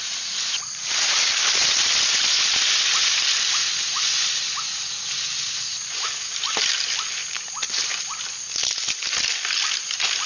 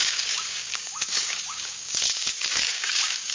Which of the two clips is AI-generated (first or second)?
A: second